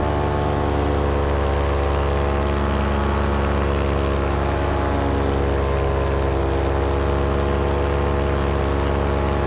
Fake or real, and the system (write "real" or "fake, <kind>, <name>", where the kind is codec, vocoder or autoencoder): real